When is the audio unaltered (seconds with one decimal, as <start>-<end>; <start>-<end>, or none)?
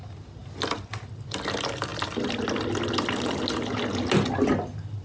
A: 0.0-5.0